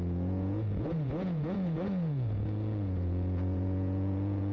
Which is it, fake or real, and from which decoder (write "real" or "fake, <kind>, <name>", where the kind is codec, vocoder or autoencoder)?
fake, vocoder, Vocos